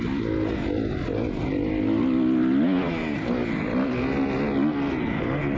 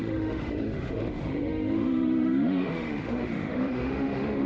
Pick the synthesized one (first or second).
second